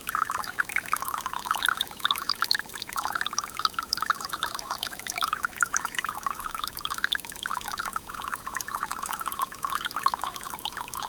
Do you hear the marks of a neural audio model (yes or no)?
yes